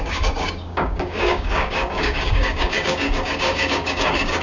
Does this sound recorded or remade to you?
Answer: remade